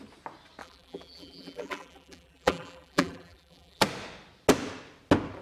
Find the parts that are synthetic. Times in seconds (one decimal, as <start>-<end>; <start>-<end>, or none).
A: 0.6-3.8